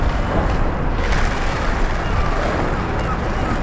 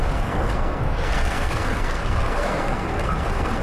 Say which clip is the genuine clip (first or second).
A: first